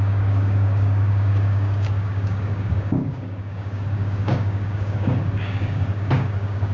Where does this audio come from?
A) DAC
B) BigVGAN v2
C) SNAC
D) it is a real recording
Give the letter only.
A